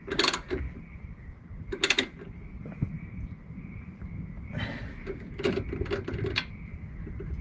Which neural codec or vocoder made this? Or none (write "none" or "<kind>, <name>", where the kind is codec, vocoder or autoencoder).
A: none